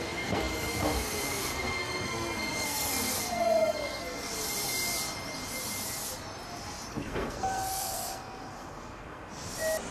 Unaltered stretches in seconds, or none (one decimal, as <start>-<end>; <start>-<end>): 4.3-6.9; 9.3-9.9